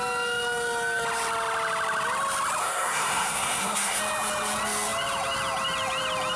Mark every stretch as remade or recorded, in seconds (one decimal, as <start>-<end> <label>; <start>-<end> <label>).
0.0-2.6 recorded; 2.6-4.0 remade; 4.0-6.4 recorded